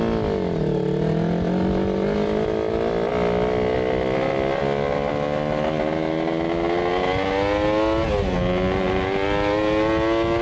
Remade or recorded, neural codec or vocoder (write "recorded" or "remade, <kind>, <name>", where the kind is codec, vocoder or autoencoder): recorded